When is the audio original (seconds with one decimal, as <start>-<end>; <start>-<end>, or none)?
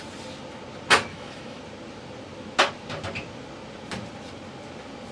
0.0-1.1; 1.6-5.1